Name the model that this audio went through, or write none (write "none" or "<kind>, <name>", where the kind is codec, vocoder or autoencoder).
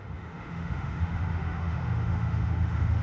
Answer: autoencoder, DAC-VAE